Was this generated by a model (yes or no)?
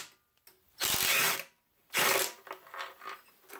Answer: no